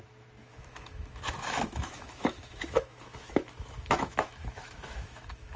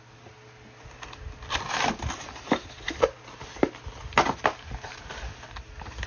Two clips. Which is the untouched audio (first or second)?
second